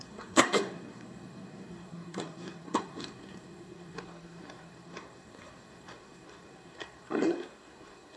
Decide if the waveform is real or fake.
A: fake